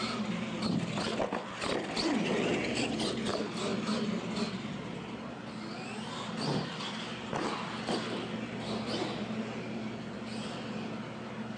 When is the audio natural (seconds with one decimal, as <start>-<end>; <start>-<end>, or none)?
0.0-11.6